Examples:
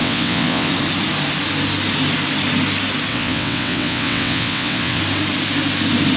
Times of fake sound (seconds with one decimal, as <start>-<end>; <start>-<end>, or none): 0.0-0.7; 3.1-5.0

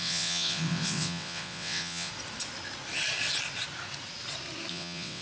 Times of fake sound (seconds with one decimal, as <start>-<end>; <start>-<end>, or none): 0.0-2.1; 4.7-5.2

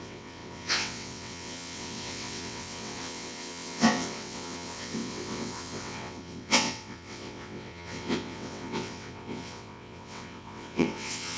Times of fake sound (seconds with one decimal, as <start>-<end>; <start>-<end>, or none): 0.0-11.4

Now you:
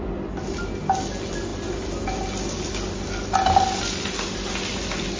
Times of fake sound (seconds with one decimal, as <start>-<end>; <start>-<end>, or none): none

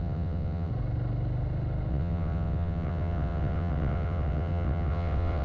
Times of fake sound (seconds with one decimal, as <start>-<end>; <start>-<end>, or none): 0.0-0.7; 1.9-5.4

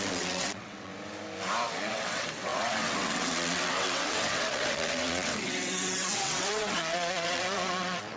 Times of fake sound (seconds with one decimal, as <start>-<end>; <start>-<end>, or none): 0.0-0.9; 1.9-8.2